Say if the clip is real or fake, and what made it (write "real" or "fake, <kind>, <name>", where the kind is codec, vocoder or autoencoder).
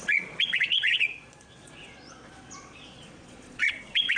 fake, vocoder, Vocos